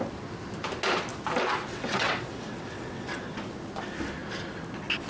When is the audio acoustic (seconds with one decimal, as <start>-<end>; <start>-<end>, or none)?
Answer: 0.0-1.7; 3.2-5.1